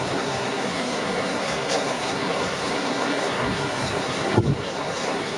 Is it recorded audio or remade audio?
remade